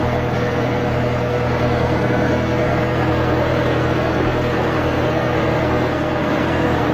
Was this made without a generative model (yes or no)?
no